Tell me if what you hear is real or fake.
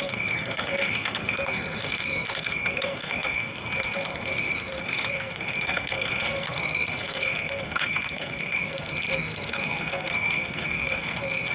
fake